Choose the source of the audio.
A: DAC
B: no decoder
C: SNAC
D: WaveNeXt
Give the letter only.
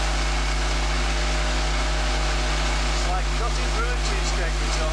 B